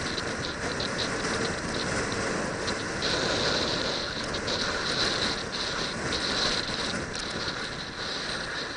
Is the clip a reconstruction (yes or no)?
no